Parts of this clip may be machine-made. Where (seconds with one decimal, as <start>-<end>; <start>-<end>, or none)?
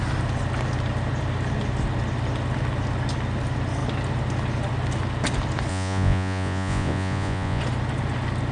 5.7-7.6